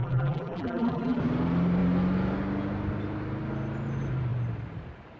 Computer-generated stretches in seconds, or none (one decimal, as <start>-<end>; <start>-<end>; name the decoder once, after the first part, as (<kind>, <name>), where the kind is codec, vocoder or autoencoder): 0.0-1.2 (vocoder, BigVGAN v2)